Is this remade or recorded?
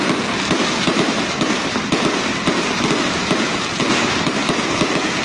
recorded